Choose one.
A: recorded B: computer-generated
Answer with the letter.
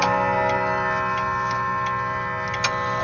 A